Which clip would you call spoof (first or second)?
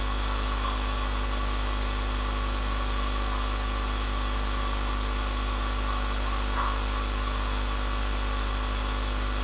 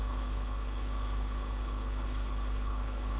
second